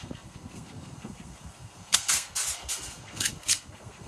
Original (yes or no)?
no